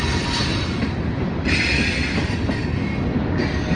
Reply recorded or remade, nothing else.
recorded